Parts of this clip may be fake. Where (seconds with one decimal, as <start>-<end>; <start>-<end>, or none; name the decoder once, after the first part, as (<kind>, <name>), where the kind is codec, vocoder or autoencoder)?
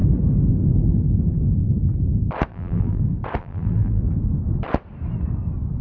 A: 2.5-3.0 (vocoder, BigVGAN v2); 3.4-4.0